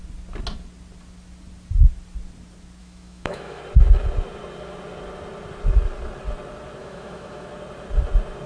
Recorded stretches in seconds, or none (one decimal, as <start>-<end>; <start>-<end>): 0.0-2.8; 3.6-6.8; 7.5-8.5